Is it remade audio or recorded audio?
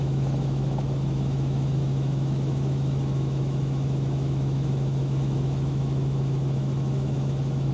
remade